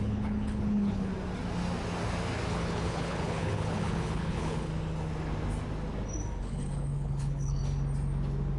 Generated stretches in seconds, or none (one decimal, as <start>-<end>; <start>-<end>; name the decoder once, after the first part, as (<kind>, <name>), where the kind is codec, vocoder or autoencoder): 0.0-1.1 (codec, HILCodec); 2.5-4.7; 6.4-7.6